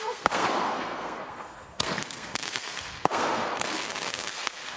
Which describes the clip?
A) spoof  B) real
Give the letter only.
A